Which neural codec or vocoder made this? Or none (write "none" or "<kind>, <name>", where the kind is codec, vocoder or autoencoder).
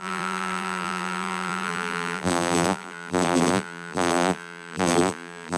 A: vocoder, BigVGAN v2